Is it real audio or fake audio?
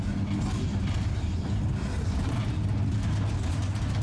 real